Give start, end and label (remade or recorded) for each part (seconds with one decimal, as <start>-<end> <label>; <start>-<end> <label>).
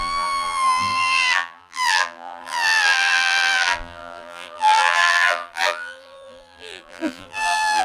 0.0-7.8 remade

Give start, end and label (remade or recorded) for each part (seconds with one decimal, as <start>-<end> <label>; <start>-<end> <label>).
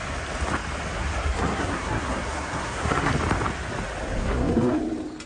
0.0-0.9 recorded; 0.9-3.1 remade; 3.1-4.2 recorded; 4.2-4.8 remade; 4.8-5.3 recorded